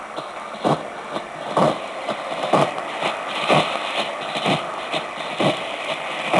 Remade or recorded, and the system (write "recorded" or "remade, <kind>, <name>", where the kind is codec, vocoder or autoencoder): recorded